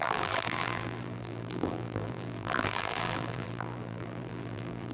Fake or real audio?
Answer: fake